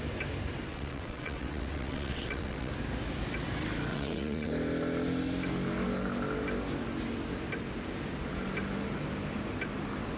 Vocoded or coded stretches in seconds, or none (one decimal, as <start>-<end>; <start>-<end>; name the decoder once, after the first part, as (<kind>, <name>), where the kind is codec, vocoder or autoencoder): 0.7-2.7 (vocoder, WaveNeXt); 3.9-4.5